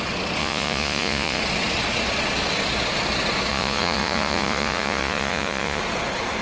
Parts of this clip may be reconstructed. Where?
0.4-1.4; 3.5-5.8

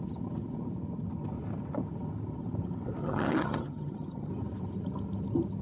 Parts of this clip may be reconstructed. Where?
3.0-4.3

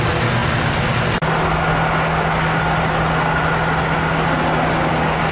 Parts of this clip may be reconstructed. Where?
none

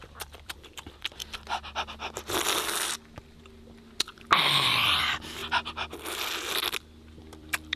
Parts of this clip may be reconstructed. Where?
0.0-1.2; 5.0-5.4; 7.2-7.8

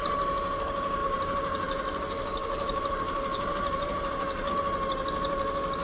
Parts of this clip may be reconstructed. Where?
1.0-4.5